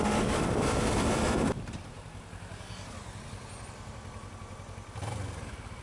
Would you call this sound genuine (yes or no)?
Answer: yes